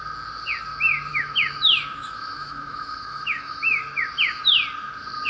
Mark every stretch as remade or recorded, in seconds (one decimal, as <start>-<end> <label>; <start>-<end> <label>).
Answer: 0.0-1.1 recorded; 1.1-3.8 remade; 3.8-5.3 recorded